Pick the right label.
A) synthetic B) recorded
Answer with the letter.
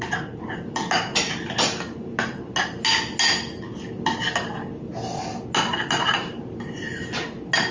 B